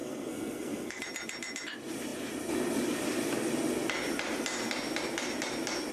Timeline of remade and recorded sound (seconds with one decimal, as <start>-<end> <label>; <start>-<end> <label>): 0.0-1.0 remade; 1.0-5.9 recorded